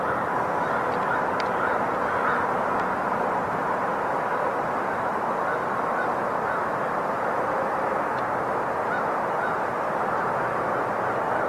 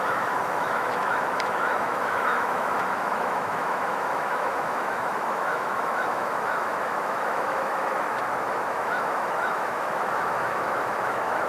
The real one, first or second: first